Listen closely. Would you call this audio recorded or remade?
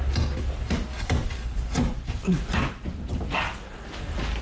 recorded